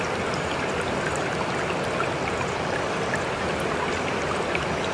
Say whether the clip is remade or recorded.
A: recorded